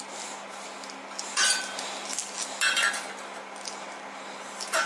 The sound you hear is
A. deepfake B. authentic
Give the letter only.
B